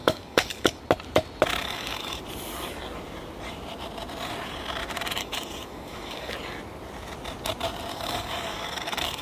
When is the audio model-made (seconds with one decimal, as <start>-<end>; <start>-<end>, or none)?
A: 0.0-0.8; 1.6-2.2; 5.2-6.3; 7.9-9.2